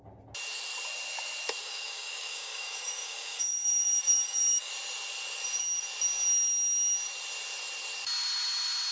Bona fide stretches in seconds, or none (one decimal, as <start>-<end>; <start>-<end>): 0.0-1.6; 4.7-8.9